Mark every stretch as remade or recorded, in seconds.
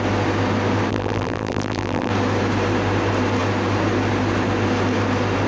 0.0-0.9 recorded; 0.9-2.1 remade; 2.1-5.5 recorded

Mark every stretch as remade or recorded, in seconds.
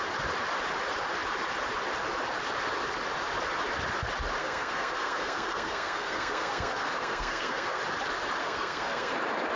0.0-4.4 recorded; 4.4-7.8 remade; 7.8-8.4 recorded; 8.4-9.1 remade; 9.1-9.6 recorded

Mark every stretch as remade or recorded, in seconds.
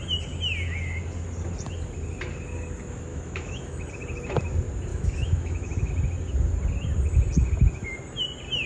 0.0-3.1 recorded; 3.1-3.9 remade; 3.9-4.9 recorded; 4.9-5.9 remade; 5.9-8.7 recorded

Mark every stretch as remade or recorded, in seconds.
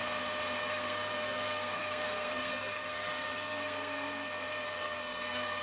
0.0-0.6 recorded; 0.6-5.6 remade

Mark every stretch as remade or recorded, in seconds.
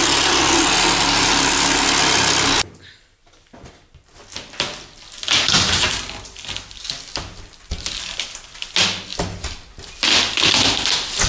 0.0-11.3 recorded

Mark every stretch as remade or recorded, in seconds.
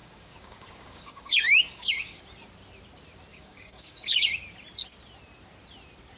0.0-2.2 remade; 2.2-3.3 recorded; 3.3-4.3 remade; 4.3-6.2 recorded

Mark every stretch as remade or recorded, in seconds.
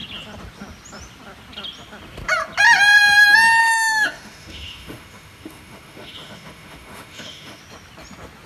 0.0-3.6 recorded; 3.6-7.6 remade; 7.6-8.5 recorded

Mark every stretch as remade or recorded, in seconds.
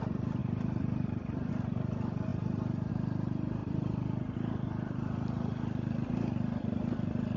0.0-0.4 recorded; 0.4-1.5 remade; 1.5-3.6 recorded; 3.6-4.7 remade; 4.7-7.4 recorded